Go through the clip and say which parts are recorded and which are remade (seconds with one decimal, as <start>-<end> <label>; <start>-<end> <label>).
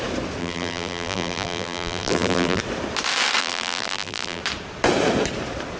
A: 0.0-0.4 recorded; 0.4-2.6 remade; 2.6-3.4 recorded; 3.4-4.4 remade; 4.4-5.8 recorded